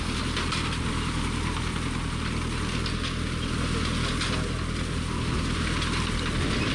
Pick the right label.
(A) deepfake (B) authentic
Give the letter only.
B